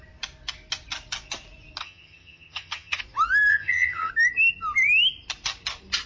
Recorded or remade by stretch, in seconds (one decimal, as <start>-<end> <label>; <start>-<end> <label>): 0.0-1.8 recorded; 1.8-3.0 remade; 3.0-3.5 recorded; 3.5-4.1 remade; 4.1-6.1 recorded